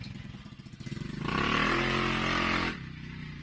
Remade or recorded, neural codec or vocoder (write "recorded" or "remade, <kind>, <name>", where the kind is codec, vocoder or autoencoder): recorded